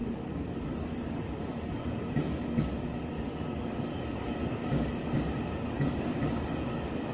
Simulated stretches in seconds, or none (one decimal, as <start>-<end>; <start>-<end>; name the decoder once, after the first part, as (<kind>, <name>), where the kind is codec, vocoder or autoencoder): 0.0-5.0 (codec, DAC); 5.6-7.1